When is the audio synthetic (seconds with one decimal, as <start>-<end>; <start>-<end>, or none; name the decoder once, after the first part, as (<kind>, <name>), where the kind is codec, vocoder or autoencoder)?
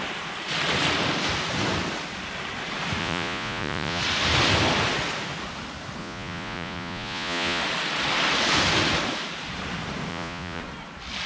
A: 3.0-4.0 (vocoder, Vocos); 6.0-7.6; 10.1-10.6